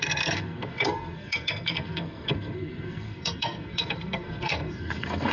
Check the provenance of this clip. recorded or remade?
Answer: remade